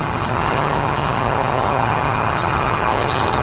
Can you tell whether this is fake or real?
fake